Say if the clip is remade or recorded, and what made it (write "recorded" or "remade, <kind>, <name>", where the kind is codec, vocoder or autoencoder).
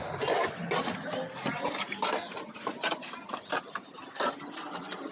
recorded